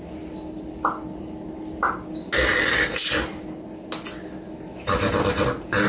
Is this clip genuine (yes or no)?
yes